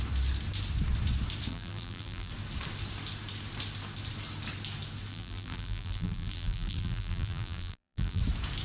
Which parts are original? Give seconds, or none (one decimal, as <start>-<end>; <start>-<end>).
0.0-1.5; 2.3-5.1; 8.2-8.6

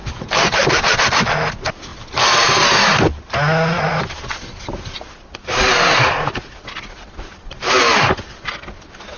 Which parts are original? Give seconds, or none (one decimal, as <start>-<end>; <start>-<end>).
0.7-9.2

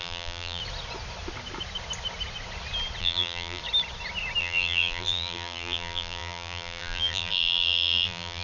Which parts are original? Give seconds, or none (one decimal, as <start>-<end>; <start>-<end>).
0.6-3.0; 3.6-4.4

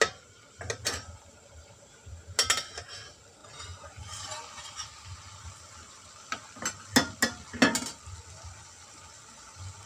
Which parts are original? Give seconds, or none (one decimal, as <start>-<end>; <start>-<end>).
0.0-9.9

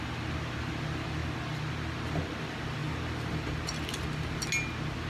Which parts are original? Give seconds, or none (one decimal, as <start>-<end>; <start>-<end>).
0.0-5.1

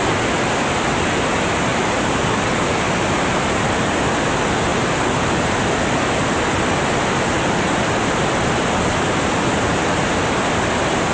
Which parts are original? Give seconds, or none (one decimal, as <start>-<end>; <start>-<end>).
0.0-1.7; 4.0-4.7; 5.5-11.1